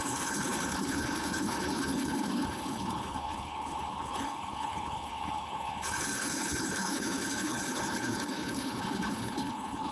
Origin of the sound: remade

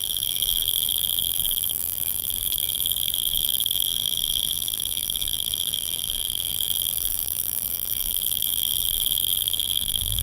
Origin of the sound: remade